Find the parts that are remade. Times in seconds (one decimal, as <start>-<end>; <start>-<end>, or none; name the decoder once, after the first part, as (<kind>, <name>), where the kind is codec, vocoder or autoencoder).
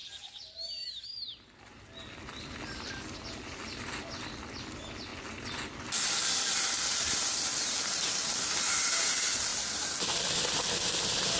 none